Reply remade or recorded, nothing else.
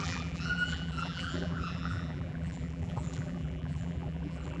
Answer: remade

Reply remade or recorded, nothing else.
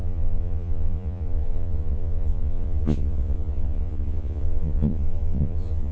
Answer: remade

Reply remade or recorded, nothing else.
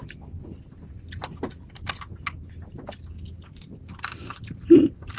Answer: recorded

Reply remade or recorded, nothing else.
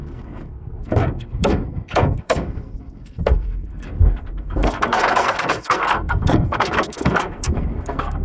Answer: remade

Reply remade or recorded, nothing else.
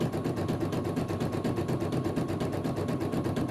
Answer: recorded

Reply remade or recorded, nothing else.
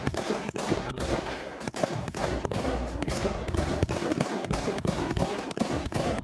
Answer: remade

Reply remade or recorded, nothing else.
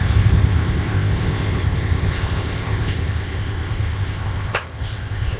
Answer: remade